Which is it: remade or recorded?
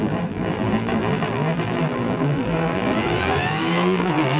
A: remade